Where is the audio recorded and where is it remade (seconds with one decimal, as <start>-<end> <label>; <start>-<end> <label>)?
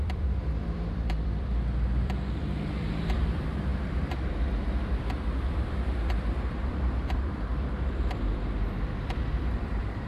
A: 0.0-7.5 remade; 7.5-8.2 recorded; 8.2-10.1 remade